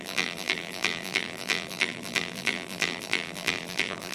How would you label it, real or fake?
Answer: fake